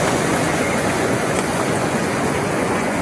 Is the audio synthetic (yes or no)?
yes